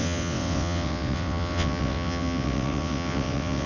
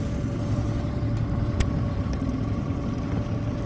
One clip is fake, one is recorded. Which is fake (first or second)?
first